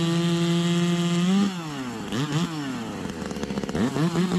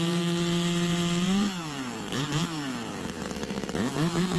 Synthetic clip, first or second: second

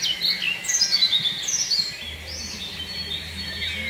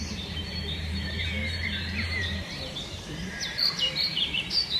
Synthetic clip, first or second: second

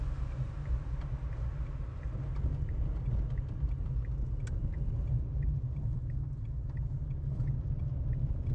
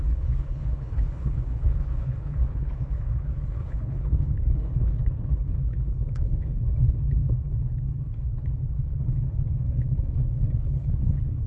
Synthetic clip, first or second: second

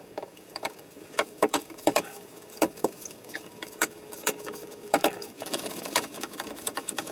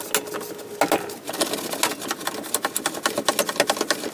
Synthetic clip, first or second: first